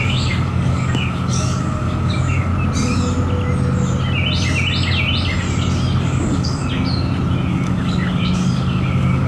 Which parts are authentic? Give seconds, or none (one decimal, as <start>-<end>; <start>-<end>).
2.5-6.0; 6.6-7.5